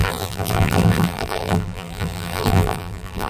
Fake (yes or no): yes